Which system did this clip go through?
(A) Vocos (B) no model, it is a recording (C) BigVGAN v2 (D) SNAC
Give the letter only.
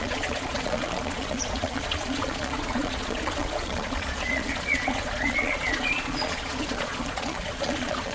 A